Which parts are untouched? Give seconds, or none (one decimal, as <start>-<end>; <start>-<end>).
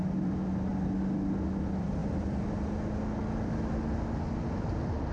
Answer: 0.0-5.1